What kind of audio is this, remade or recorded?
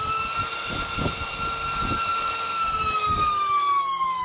recorded